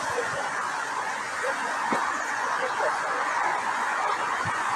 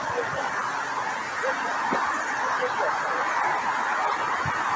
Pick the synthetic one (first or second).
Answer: first